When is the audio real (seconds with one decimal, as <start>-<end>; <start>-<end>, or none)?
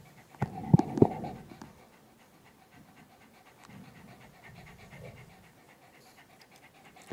none